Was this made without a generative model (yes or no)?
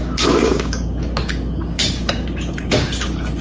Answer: no